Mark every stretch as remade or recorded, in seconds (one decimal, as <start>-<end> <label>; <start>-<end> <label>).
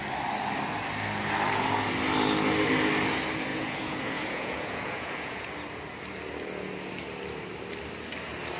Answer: 0.0-3.5 recorded; 3.5-5.5 remade; 5.5-8.6 recorded